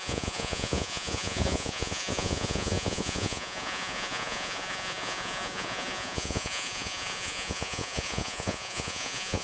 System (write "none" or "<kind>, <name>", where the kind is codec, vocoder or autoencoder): vocoder, Vocos